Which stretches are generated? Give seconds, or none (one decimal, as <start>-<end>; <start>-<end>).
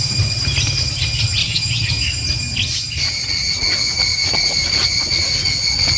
1.4-1.9